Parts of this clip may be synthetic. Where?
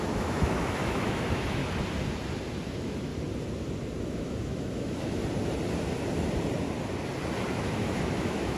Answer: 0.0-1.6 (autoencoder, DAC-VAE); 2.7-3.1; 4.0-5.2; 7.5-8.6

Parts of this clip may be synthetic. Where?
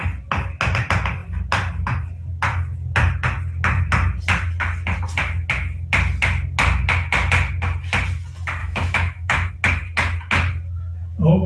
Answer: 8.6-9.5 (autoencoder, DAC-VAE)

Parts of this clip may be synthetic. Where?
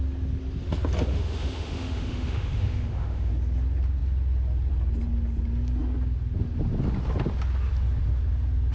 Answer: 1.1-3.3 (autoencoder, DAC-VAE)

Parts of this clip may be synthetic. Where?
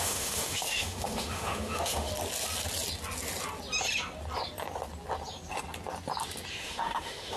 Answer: 0.0-2.1 (autoencoder, DAC-VAE); 6.5-7.4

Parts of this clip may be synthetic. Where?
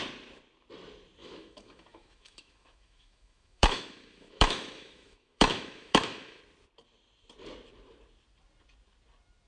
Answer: 1.2-6.4 (autoencoder, DAC-VAE)